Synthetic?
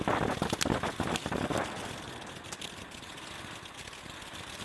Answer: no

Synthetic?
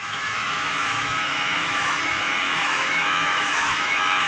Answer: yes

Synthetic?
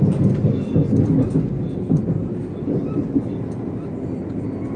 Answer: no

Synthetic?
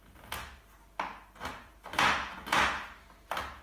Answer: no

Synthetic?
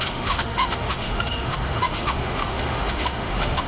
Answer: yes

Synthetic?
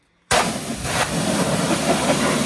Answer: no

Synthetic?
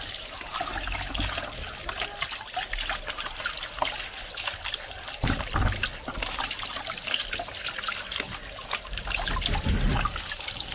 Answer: no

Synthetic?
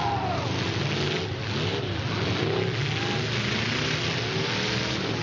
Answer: no